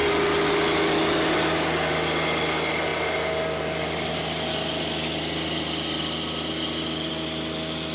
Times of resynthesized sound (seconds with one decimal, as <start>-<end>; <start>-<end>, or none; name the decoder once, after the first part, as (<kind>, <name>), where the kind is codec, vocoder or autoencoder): none